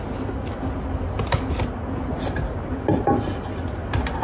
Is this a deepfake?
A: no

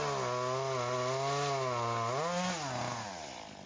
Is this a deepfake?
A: no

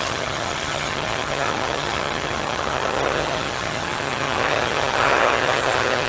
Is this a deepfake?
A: yes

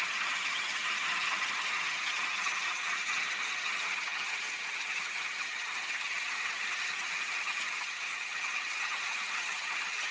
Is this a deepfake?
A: yes